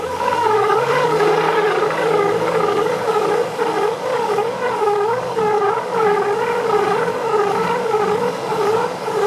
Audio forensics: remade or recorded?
remade